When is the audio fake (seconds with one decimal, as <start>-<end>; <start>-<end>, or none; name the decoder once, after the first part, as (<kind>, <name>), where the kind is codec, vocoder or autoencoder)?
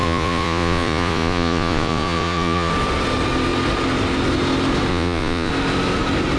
0.0-2.7 (vocoder, Vocos); 4.9-5.5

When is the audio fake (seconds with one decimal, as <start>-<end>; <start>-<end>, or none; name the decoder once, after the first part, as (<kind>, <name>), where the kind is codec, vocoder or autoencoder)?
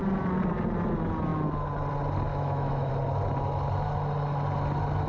2.3-2.9 (autoencoder, DAC-VAE)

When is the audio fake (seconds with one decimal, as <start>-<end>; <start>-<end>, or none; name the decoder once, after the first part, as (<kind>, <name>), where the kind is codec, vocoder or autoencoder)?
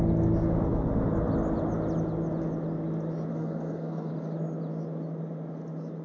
3.3-4.1 (codec, SNAC)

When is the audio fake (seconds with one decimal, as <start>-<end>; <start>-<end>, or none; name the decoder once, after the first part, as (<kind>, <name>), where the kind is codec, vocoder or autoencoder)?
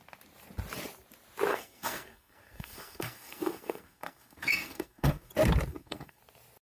1.5-5.3 (codec, SNAC); 5.7-6.2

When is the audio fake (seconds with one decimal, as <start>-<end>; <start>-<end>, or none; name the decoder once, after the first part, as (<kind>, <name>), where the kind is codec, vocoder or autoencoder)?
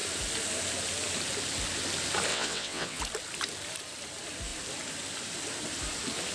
2.3-3.0 (vocoder, WaveNeXt)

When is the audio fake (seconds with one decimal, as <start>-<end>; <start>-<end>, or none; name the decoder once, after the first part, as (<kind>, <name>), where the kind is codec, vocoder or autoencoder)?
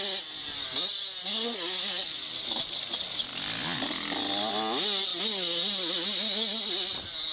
none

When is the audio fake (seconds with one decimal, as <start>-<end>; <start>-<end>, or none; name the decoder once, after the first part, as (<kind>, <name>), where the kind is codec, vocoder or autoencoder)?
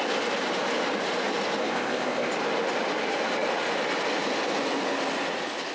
1.6-2.3 (codec, ZipCodec)